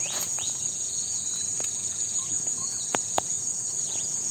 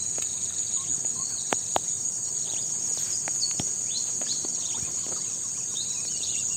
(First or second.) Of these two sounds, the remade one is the first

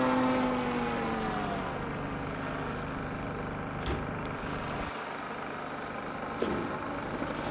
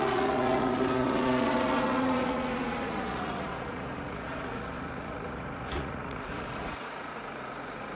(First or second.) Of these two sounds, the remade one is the second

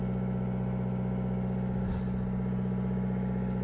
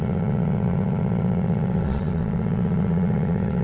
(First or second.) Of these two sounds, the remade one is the second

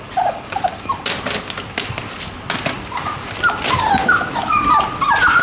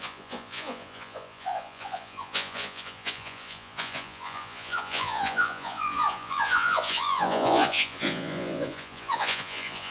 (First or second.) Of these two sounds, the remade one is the second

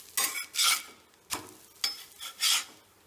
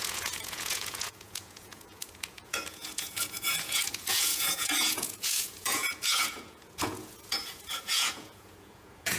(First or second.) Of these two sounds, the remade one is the second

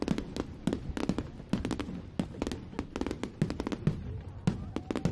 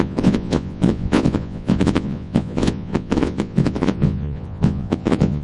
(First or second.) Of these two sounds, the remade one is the second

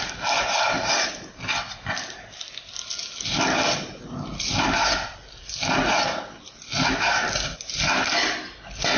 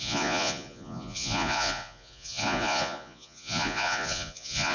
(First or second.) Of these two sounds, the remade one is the second